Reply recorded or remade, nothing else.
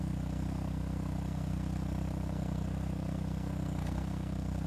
remade